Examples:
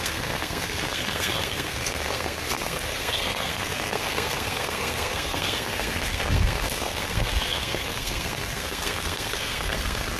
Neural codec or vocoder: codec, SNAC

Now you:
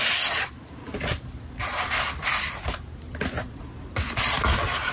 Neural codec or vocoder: none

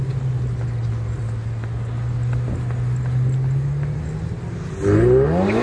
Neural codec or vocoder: none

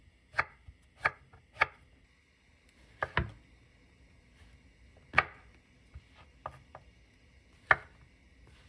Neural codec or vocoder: none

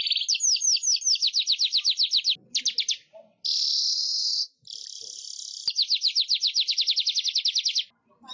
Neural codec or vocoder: none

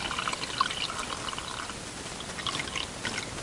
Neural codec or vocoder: none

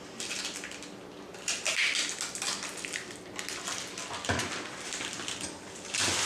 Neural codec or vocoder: none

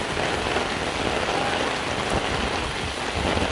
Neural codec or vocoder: none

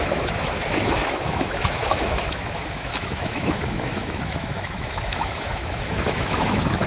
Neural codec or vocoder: autoencoder, DAC-VAE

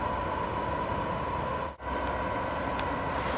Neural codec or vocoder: none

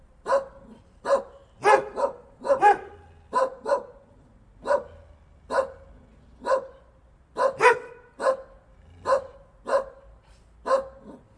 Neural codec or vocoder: none